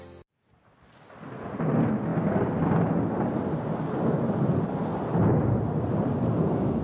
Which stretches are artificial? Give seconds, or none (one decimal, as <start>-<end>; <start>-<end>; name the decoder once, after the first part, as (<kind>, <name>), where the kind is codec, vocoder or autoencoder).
none